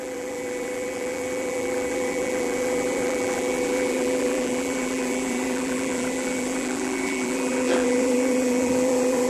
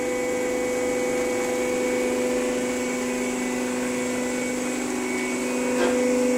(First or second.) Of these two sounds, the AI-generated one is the first